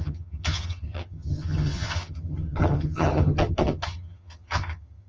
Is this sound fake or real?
fake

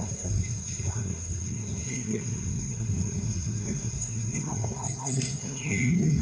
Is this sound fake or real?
fake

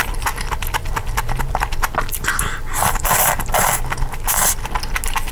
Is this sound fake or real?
real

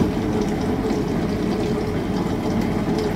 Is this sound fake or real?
fake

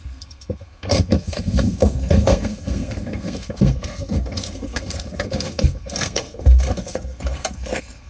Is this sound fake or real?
fake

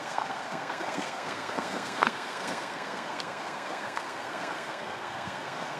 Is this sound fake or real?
fake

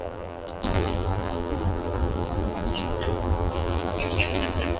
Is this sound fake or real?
fake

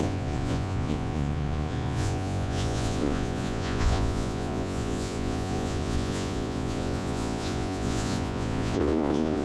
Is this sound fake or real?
fake